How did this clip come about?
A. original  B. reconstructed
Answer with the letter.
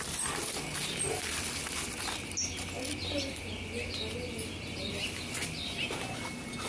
A